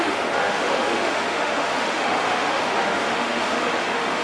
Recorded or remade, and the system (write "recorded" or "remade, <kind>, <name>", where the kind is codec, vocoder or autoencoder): remade, autoencoder, DAC-VAE